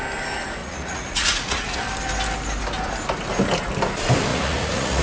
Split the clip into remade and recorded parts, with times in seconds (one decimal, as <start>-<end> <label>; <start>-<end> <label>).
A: 0.0-0.6 recorded; 0.6-1.8 remade; 1.8-4.3 recorded; 4.3-5.0 remade